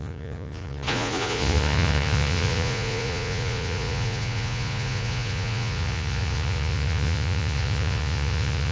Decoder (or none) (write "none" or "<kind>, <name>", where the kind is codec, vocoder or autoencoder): vocoder, Vocos